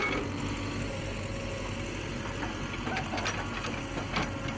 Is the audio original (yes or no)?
yes